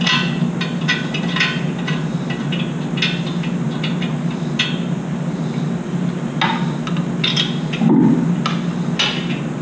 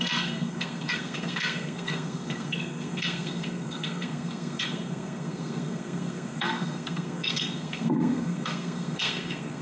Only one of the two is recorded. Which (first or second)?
first